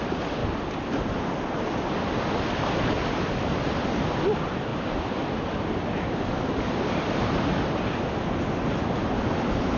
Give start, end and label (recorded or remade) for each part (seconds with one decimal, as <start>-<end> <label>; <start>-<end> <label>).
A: 0.0-9.8 recorded